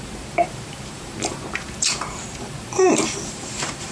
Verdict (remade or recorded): remade